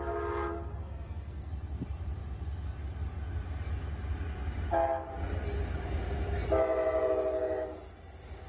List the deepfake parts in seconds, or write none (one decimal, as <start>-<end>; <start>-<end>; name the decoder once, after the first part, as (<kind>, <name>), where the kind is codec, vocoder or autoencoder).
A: 0.7-1.5 (codec, SNAC)